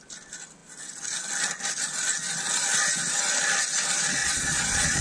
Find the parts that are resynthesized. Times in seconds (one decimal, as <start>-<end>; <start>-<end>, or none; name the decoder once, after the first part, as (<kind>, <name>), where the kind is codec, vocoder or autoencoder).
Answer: 4.2-5.0 (vocoder, Vocos)